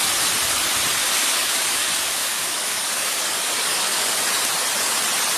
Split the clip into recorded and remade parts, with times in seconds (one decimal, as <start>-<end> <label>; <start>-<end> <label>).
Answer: 0.0-1.0 recorded; 1.0-4.2 remade; 4.2-5.4 recorded